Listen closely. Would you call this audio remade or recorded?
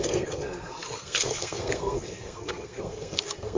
remade